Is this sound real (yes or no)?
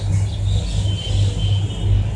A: yes